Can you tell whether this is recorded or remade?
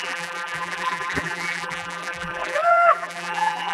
remade